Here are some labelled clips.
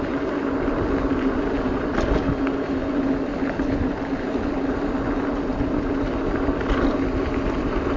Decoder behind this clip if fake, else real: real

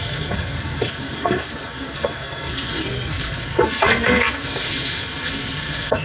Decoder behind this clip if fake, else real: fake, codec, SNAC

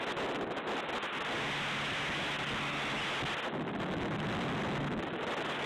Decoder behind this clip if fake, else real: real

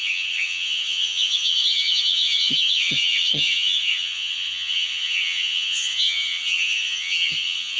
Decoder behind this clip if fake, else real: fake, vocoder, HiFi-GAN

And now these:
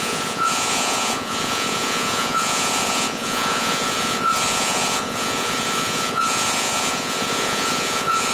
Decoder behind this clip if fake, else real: fake, vocoder, Vocos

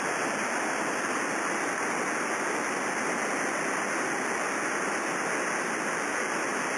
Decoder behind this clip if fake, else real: real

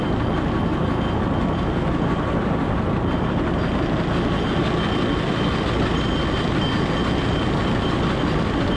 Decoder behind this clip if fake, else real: real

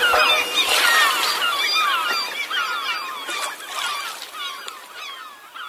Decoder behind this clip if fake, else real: real